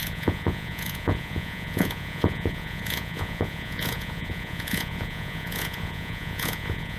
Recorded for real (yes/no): no